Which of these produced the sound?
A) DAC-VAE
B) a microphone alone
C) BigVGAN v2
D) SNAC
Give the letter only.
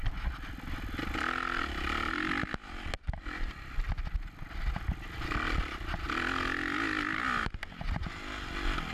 B